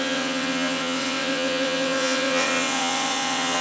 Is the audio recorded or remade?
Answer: remade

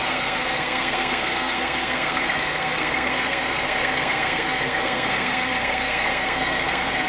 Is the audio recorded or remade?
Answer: remade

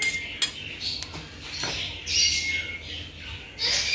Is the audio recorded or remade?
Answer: recorded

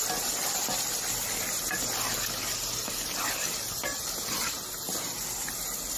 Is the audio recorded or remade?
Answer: recorded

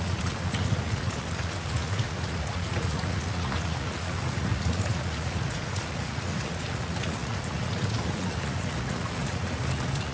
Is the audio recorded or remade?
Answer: remade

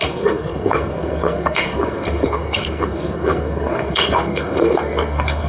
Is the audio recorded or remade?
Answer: remade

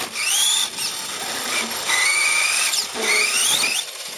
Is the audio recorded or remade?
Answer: remade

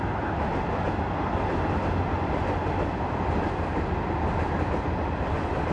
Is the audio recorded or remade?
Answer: recorded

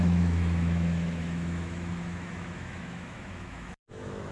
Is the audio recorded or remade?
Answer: remade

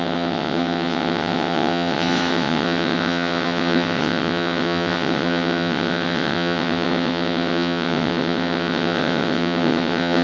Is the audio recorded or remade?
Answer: remade